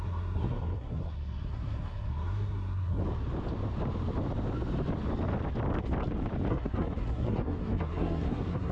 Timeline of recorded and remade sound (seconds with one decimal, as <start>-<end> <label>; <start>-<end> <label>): 0.0-3.0 remade; 3.0-6.5 recorded; 6.5-8.7 remade